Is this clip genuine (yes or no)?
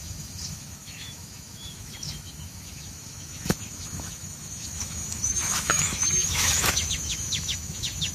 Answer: no